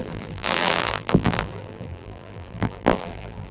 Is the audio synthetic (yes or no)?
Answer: yes